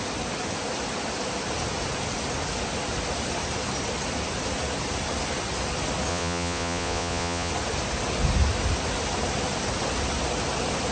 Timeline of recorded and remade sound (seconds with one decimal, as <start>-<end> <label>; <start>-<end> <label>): 0.0-6.1 recorded; 6.1-7.5 remade; 7.5-10.9 recorded